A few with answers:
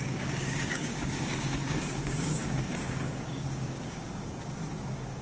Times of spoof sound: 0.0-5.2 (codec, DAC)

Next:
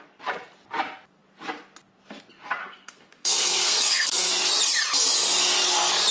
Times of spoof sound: 2.6-4.3 (codec, SNAC)

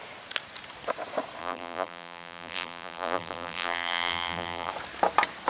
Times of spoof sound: 1.4-4.7 (vocoder, BigVGAN v2)

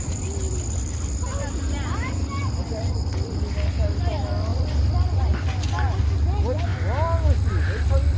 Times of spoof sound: 2.4-3.3 (vocoder, BigVGAN v2)